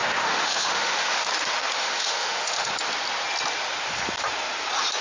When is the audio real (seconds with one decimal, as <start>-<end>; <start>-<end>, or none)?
1.3-1.8; 2.7-5.0